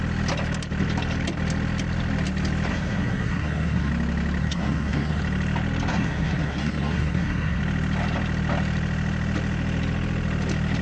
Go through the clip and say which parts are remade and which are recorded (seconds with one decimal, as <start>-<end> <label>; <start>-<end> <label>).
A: 0.0-2.7 recorded; 2.7-3.9 remade; 3.9-4.4 recorded; 4.4-5.2 remade; 5.2-5.9 recorded; 5.9-7.6 remade; 7.6-10.8 recorded